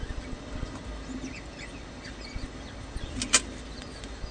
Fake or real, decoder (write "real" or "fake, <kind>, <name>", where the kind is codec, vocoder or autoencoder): real